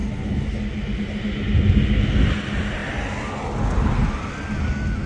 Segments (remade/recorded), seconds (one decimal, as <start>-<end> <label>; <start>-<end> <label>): 0.0-5.1 recorded